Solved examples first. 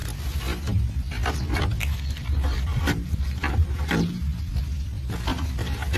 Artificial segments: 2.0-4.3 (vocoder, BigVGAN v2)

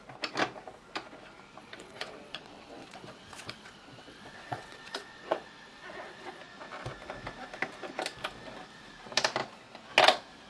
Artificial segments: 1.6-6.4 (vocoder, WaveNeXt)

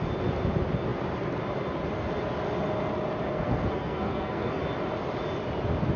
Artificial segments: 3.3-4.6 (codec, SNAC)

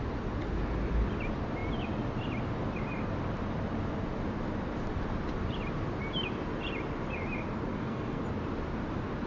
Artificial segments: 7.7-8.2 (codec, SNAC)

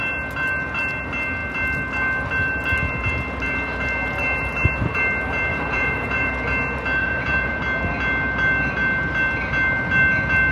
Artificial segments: 5.5-6.3 (vocoder, Vocos); 7.0-7.6

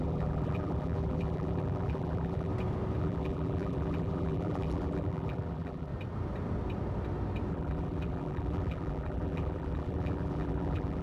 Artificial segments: 0.0-2.5 (vocoder, BigVGAN v2); 3.0-5.9; 7.5-11.0

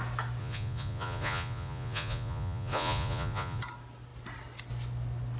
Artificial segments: 0.4-3.6 (vocoder, Vocos)